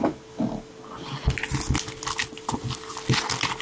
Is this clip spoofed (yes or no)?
no